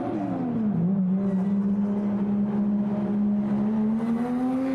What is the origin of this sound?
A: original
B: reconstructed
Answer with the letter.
A